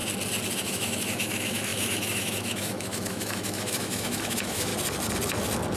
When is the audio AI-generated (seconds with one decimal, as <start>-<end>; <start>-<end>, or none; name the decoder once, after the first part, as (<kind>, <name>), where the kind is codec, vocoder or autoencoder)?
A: 0.6-4.7 (autoencoder, DAC-VAE)

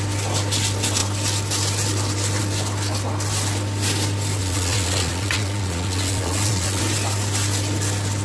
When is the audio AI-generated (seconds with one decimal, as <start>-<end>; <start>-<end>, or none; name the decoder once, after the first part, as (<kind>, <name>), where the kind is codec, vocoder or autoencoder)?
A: 4.4-6.8 (vocoder, Vocos)

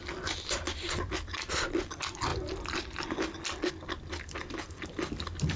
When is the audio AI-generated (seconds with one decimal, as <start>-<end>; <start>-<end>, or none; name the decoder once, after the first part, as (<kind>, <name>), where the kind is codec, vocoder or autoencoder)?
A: none

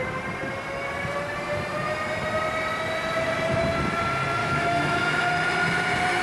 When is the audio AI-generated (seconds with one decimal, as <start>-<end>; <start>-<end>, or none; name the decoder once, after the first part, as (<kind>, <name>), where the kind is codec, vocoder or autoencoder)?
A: 4.4-5.3 (autoencoder, DAC-VAE)

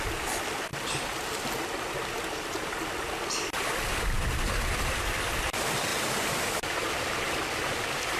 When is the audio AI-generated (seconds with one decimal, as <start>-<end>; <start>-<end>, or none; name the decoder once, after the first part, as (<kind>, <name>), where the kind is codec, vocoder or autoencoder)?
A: none

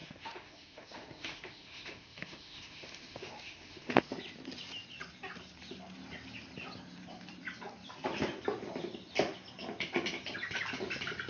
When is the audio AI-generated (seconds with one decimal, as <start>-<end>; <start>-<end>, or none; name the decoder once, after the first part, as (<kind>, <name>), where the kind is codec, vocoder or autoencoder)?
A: 0.0-4.2 (autoencoder, DAC-VAE)